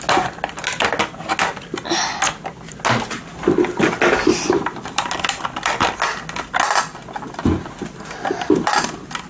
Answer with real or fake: real